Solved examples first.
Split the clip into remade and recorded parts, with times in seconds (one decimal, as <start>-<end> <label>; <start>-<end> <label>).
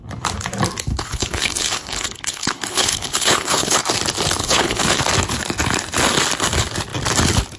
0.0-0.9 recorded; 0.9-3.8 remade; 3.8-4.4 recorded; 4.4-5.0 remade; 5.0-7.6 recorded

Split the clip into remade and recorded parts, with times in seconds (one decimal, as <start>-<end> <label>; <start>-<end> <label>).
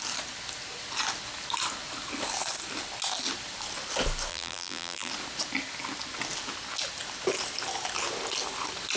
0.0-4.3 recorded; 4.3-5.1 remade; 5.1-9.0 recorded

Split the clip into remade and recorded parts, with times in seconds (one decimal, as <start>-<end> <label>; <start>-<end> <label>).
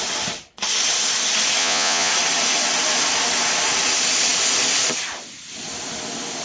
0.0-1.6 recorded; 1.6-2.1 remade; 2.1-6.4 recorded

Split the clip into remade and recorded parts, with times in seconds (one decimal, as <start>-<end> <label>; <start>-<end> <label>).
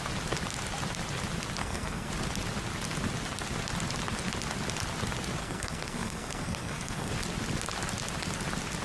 0.0-1.6 recorded; 1.6-2.1 remade; 2.1-5.4 recorded; 5.4-7.1 remade; 7.1-8.8 recorded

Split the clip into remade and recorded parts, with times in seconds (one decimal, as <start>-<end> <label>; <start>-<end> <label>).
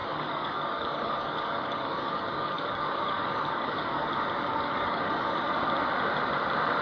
0.0-4.1 remade; 4.1-4.5 recorded; 4.5-5.6 remade; 5.6-6.8 recorded